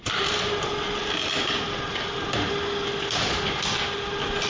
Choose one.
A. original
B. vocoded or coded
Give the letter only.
A